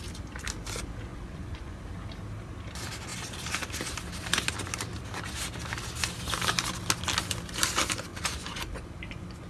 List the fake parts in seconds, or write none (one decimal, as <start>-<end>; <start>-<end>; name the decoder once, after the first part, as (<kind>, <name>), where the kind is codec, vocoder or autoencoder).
1.1-1.8 (vocoder, Vocos); 8.1-9.5